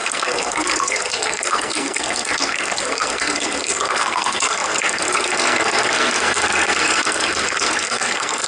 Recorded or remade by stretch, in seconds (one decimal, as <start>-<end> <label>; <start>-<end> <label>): 0.0-8.5 remade

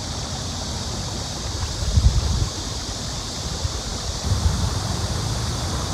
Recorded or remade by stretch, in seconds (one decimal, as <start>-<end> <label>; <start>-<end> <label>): 0.0-3.9 recorded; 3.9-5.5 remade; 5.5-5.9 recorded

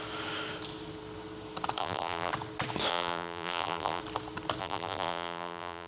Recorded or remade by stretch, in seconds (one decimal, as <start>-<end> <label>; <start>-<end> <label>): 0.0-1.8 recorded; 1.8-2.3 remade; 2.3-2.9 recorded; 2.9-4.0 remade; 4.0-4.6 recorded; 4.6-5.9 remade

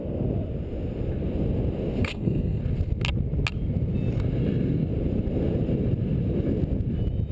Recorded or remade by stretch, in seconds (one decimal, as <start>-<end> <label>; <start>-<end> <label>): 0.0-2.0 recorded; 2.0-2.6 remade; 2.6-7.3 recorded

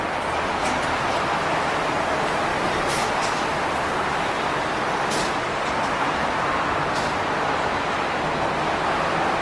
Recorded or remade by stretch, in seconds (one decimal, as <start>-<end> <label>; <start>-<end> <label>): 0.0-2.5 recorded; 2.5-6.9 remade; 6.9-9.4 recorded

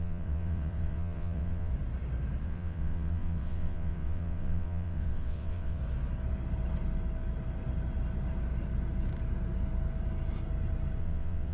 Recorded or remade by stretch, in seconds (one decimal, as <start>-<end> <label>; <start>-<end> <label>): 0.0-1.7 remade; 1.7-2.4 recorded; 2.4-5.8 remade; 5.8-11.0 recorded; 11.0-11.5 remade